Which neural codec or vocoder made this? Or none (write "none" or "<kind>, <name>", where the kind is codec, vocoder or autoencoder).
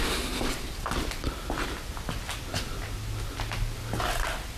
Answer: none